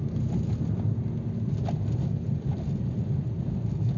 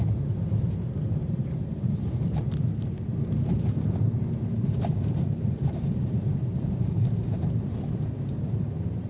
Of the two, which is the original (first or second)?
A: first